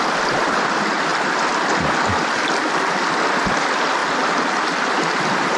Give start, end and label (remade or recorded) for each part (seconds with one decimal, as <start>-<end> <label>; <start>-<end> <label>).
0.0-4.0 remade; 4.0-4.8 recorded; 4.8-5.6 remade